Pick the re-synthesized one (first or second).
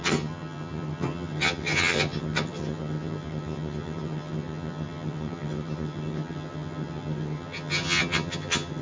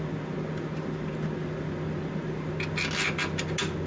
first